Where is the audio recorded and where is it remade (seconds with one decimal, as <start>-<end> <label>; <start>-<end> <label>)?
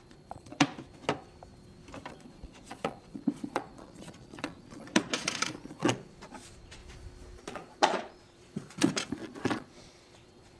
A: 0.0-0.7 remade; 0.7-2.1 recorded; 2.1-6.8 remade; 6.8-7.4 recorded; 7.4-10.6 remade